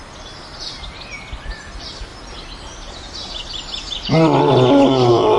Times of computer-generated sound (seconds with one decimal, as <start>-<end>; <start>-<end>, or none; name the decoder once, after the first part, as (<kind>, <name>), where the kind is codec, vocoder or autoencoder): none